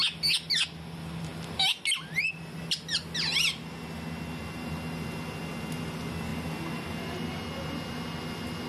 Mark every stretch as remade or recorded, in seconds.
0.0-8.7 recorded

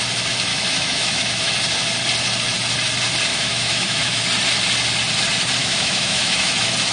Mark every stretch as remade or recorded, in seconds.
0.0-0.5 recorded; 0.5-1.5 remade; 1.5-3.3 recorded; 3.3-4.2 remade; 4.2-5.6 recorded; 5.6-6.5 remade; 6.5-6.9 recorded

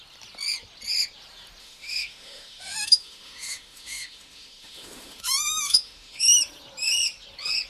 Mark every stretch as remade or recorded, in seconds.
0.0-1.6 recorded; 1.6-6.2 remade; 6.2-7.7 recorded